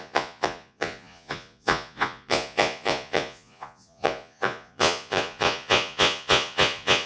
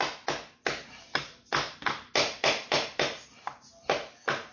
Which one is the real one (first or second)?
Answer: second